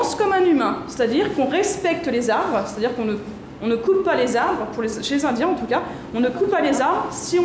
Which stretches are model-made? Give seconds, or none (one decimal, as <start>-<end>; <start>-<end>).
none